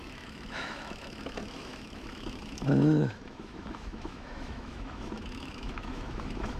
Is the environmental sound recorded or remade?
remade